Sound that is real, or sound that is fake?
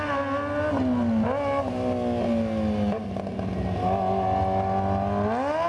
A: real